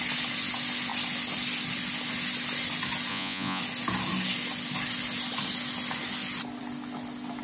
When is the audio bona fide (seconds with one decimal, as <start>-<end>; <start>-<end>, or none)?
0.0-3.1; 3.6-7.4